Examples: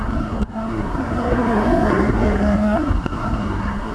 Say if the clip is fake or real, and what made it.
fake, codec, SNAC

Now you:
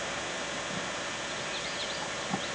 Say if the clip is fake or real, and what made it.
real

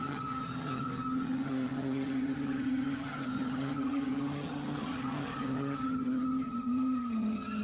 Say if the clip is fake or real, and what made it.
fake, vocoder, HiFi-GAN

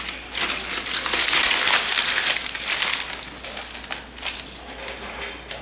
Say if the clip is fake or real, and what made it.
real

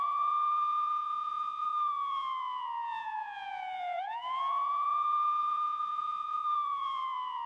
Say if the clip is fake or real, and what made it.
fake, vocoder, Vocos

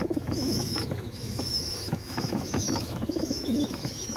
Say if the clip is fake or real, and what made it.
fake, autoencoder, DAC-VAE